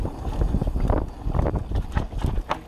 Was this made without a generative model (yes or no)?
yes